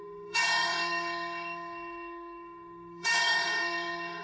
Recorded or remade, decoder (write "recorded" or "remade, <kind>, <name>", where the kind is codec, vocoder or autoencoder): remade, autoencoder, DAC-VAE